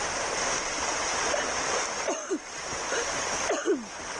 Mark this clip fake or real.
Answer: real